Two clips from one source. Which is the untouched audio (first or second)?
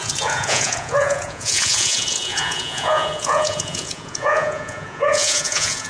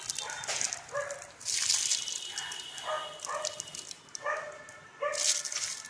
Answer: second